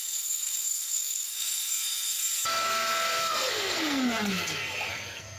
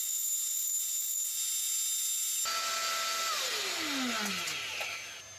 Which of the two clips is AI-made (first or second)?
first